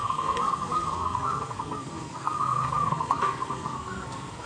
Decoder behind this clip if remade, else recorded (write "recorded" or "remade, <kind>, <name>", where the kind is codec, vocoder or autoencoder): remade, codec, SNAC